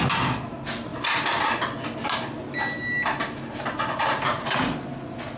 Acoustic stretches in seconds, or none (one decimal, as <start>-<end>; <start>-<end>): 0.0-5.4